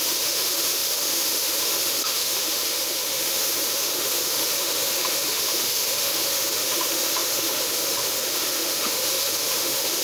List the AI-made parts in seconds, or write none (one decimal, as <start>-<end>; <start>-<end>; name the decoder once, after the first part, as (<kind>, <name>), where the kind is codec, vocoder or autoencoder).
0.0-10.0 (autoencoder, DAC-VAE)